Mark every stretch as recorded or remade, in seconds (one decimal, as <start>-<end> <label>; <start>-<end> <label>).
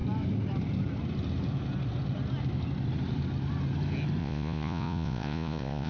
0.0-4.2 recorded; 4.2-5.9 remade